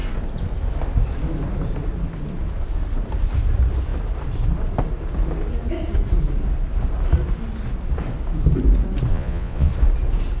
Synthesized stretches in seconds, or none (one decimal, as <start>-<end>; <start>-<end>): 9.1-9.7